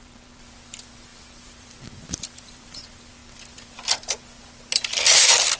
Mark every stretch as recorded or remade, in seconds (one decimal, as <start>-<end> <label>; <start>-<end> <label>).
0.0-5.6 remade

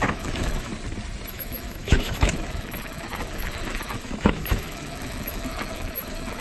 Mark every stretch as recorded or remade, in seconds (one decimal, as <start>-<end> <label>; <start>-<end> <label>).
0.0-0.7 remade; 0.7-1.3 recorded; 1.3-6.4 remade

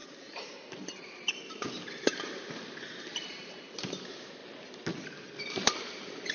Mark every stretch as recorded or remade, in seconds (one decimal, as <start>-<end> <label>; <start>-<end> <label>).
0.0-4.4 remade; 4.4-5.5 recorded; 5.5-6.3 remade

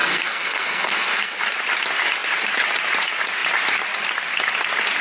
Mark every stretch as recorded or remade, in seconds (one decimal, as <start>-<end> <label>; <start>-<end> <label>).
0.0-1.4 remade; 1.4-5.0 recorded

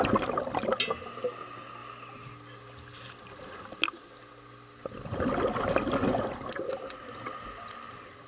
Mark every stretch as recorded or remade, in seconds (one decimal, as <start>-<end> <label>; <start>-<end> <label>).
0.0-8.3 recorded

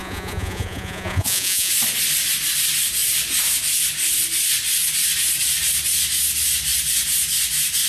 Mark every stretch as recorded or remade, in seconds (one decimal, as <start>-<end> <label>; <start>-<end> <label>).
0.0-1.7 remade; 1.7-7.9 recorded

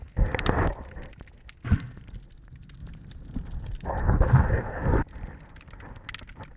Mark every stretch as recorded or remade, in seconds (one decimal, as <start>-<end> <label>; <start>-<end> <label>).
0.0-2.8 recorded; 2.8-4.1 remade; 4.1-6.6 recorded

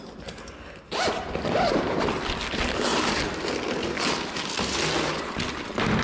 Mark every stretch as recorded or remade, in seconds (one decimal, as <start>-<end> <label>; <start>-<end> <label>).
0.0-6.0 recorded